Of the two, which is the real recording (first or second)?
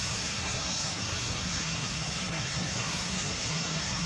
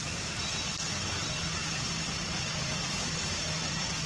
second